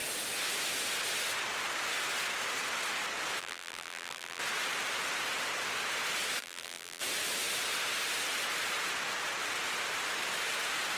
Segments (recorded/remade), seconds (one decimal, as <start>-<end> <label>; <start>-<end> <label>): 0.0-3.4 recorded; 3.4-4.4 remade; 4.4-6.4 recorded; 6.4-7.0 remade; 7.0-11.0 recorded